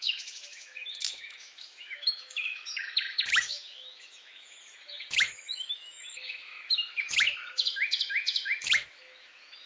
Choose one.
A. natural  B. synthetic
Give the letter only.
B